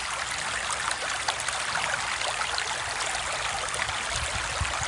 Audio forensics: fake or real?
real